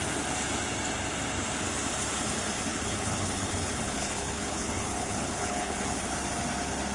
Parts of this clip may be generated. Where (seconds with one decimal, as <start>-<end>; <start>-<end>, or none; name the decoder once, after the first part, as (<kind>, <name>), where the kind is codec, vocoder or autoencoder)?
2.7-6.1 (codec, HILCodec)